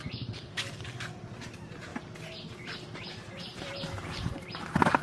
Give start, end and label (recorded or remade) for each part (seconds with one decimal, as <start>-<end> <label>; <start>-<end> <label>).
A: 0.0-1.9 remade; 1.9-3.1 recorded; 3.1-5.0 remade